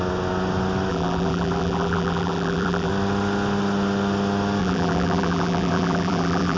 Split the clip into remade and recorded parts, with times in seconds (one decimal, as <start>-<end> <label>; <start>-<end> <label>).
0.0-0.9 recorded; 0.9-2.9 remade; 2.9-4.6 recorded; 4.6-6.6 remade